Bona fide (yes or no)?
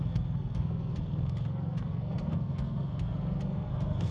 no